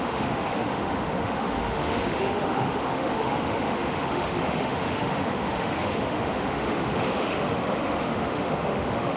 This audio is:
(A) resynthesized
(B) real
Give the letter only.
A